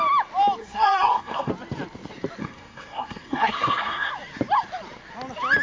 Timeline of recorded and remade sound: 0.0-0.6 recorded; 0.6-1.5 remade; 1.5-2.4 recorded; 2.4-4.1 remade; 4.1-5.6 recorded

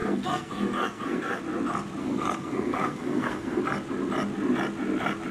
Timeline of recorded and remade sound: 0.0-1.4 remade; 1.4-2.0 recorded; 2.0-3.6 remade; 3.6-5.3 recorded